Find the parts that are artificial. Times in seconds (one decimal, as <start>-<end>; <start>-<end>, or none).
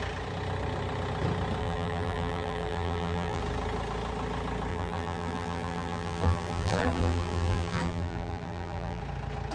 1.6-3.4; 4.7-9.0